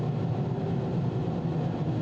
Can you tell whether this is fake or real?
real